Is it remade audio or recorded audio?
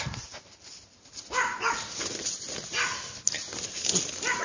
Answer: recorded